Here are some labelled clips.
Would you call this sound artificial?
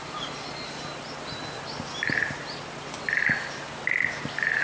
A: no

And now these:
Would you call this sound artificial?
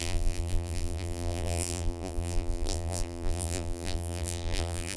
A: yes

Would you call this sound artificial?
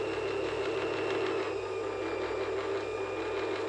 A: no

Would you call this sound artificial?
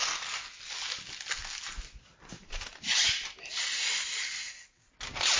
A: no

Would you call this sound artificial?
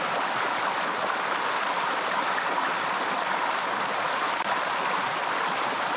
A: no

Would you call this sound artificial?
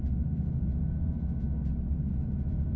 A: no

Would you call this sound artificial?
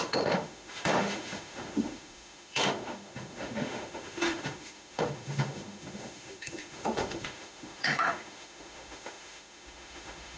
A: yes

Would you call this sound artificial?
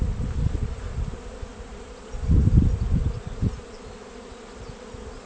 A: yes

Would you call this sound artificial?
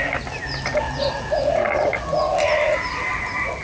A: no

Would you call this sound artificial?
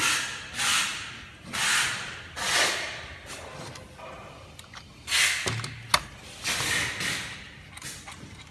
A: no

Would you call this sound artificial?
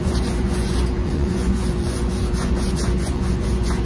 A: yes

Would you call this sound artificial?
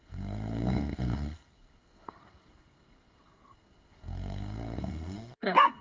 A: yes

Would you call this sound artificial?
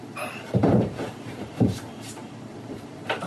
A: yes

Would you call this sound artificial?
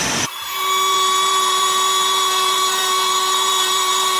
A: yes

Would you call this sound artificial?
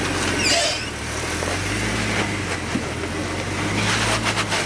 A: no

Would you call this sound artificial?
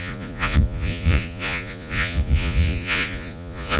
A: yes